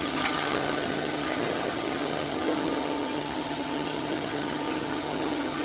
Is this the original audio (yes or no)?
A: no